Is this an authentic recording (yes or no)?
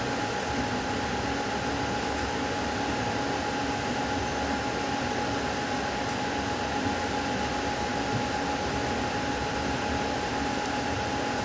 yes